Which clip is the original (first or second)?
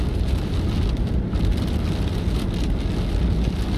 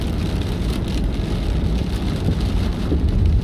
first